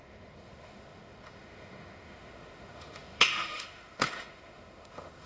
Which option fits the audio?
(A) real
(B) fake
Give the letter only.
B